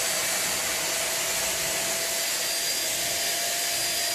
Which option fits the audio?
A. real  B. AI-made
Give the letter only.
A